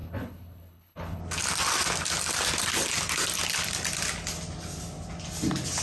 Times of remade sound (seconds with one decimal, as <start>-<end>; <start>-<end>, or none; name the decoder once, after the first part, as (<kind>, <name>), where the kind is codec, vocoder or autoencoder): 0.0-1.2 (codec, HILCodec)